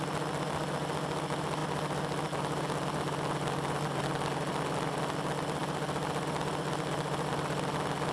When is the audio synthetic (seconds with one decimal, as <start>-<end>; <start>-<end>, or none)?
none